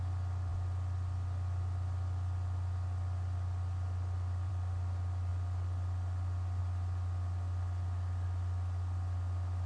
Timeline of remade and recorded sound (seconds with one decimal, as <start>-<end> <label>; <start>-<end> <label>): 0.0-9.7 recorded